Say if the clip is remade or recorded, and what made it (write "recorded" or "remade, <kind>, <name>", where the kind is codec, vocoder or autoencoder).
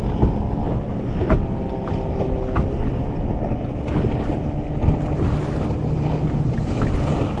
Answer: recorded